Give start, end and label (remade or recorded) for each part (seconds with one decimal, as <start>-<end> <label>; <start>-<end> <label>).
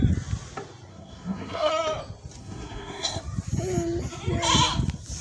0.0-0.9 recorded; 0.9-1.7 remade; 1.7-2.4 recorded; 2.4-3.2 remade; 3.2-5.2 recorded